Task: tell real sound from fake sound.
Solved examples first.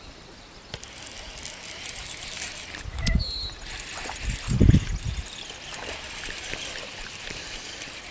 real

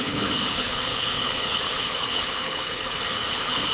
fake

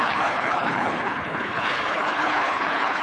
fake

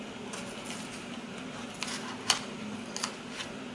real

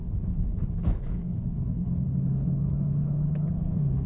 fake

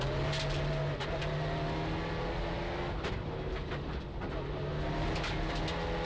real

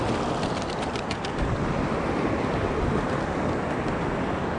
real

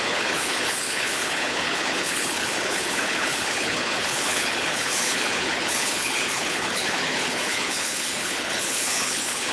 fake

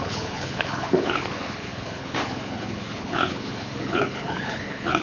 fake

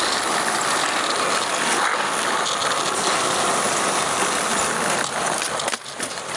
real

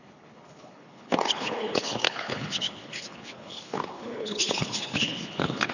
fake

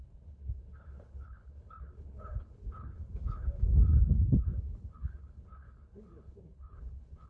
fake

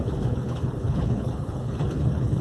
fake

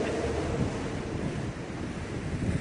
real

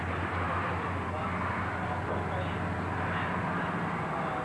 real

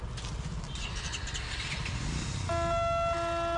real